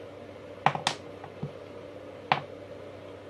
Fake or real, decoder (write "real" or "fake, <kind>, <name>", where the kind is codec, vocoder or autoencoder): real